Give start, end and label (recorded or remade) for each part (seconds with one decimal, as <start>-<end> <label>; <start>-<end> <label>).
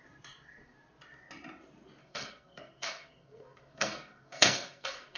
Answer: 0.0-2.0 recorded; 2.0-5.2 remade